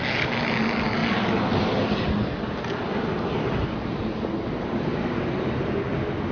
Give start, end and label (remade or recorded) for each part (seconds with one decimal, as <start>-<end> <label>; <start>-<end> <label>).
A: 0.0-6.3 recorded